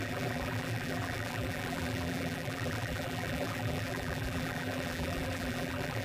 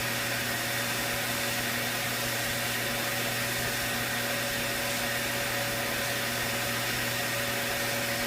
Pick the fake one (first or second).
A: first